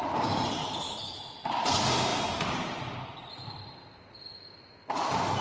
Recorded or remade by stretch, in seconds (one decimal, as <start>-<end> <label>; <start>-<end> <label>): 0.0-0.6 recorded; 0.6-1.2 remade; 1.2-5.4 recorded